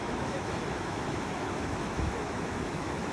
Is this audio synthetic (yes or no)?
yes